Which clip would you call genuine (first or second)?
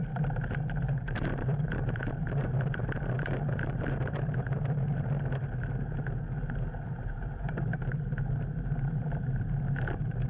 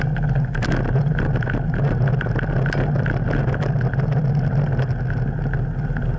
second